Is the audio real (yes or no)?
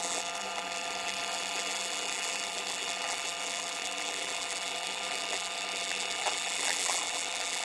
no